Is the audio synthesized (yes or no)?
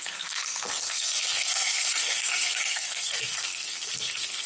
yes